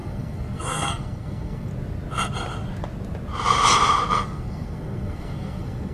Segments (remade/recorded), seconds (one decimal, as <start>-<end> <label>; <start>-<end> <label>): 0.0-1.7 remade; 1.7-4.1 recorded; 4.1-5.9 remade